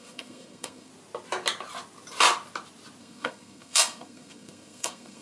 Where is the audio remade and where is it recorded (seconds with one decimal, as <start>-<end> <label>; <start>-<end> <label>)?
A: 0.0-0.9 remade; 0.9-3.0 recorded; 3.0-5.2 remade